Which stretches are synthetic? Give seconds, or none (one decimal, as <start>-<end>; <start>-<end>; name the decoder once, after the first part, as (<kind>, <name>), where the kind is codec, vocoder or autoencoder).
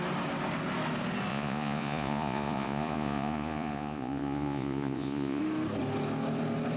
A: 1.3-5.4 (vocoder, Vocos)